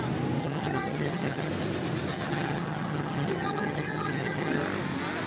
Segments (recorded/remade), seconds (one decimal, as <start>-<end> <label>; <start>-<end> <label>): 0.0-0.4 recorded; 0.4-1.5 remade; 1.5-2.1 recorded; 2.1-4.6 remade; 4.6-5.3 recorded